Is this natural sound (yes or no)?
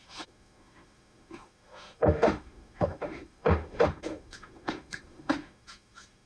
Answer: no